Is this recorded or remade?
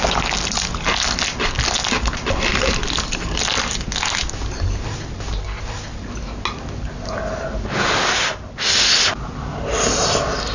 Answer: recorded